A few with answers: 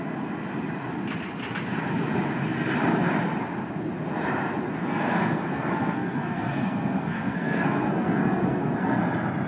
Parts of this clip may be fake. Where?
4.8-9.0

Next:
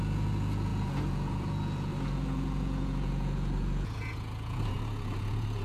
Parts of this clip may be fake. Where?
0.0-5.6